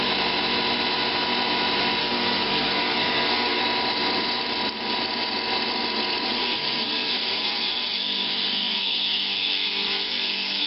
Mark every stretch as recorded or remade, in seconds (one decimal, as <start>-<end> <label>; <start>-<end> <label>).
0.0-2.0 recorded; 2.0-3.6 remade; 3.6-6.4 recorded; 6.4-10.7 remade